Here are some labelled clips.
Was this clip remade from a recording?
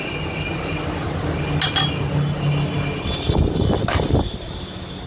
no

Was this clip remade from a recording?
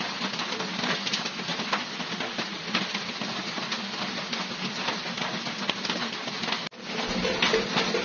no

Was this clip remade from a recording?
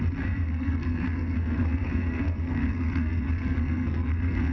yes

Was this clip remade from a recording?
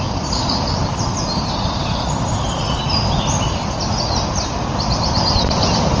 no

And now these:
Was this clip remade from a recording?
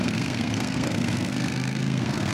yes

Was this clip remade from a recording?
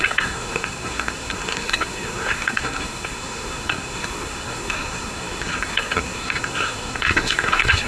yes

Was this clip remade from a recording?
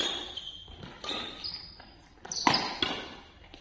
no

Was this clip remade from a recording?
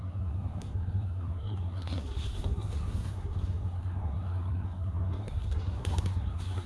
yes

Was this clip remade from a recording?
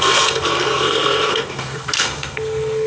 yes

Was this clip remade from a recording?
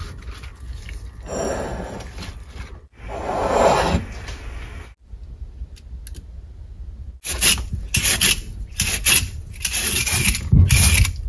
no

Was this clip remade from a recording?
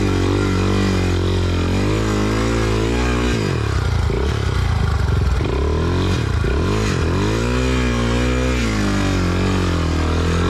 no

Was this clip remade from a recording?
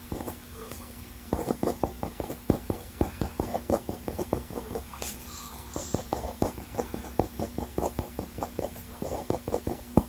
yes